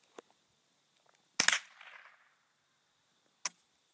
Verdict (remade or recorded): recorded